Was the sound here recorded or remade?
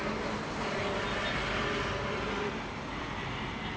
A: recorded